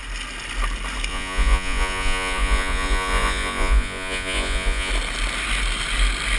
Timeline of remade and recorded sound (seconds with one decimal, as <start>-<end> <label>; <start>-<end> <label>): 0.0-1.1 recorded; 1.1-4.9 remade; 4.9-6.4 recorded